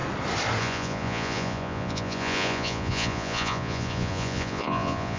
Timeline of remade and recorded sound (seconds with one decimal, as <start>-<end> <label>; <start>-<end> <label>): 0.0-0.6 recorded; 0.6-5.2 remade